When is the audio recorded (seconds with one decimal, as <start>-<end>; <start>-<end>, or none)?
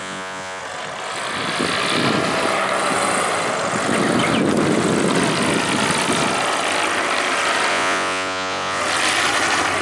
0.6-7.7; 8.8-9.8